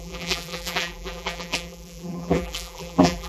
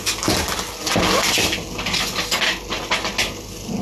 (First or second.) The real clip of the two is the second